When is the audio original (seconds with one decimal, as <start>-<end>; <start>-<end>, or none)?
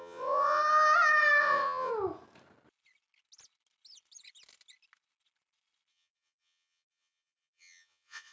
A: 0.6-1.4; 1.9-5.9